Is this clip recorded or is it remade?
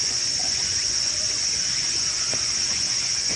remade